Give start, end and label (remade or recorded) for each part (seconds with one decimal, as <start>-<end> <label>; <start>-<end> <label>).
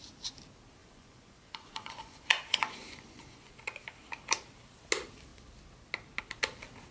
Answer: 0.0-0.8 recorded; 0.8-3.5 remade; 3.5-6.9 recorded